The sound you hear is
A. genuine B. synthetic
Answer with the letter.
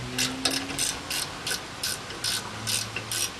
A